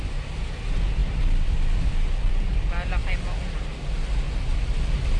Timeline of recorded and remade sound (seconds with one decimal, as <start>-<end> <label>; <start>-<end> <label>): 0.0-5.2 recorded